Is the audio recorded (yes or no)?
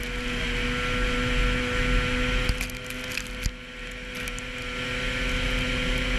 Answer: yes